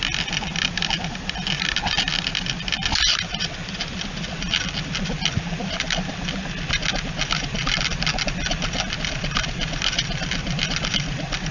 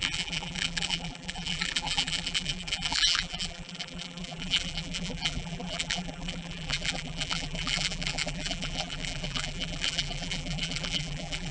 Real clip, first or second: first